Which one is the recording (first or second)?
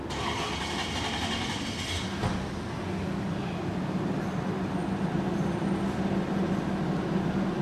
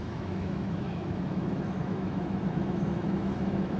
first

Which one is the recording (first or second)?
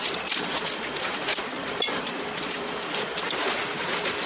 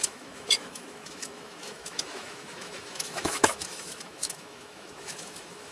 first